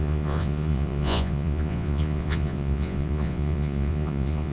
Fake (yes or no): yes